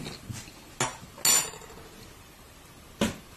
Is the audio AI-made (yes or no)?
no